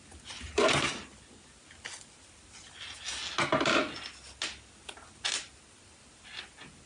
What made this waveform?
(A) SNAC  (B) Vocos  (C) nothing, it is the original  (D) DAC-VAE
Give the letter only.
C